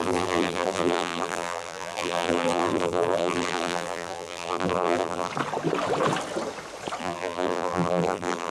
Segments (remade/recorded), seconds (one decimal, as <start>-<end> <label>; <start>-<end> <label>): 0.0-5.3 remade; 5.3-7.0 recorded; 7.0-8.5 remade